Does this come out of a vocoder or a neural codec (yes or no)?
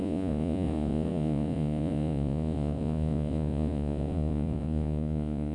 yes